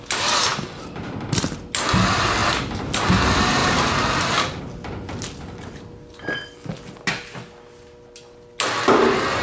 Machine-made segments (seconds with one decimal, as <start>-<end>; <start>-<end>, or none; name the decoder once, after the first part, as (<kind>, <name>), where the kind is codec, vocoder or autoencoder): 0.5-1.6 (vocoder, BigVGAN v2); 2.4-3.1; 3.6-4.6